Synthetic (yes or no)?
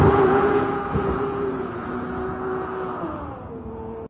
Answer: yes